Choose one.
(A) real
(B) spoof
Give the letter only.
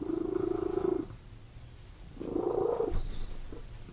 A